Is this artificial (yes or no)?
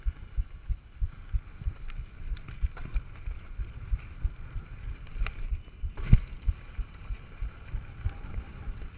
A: no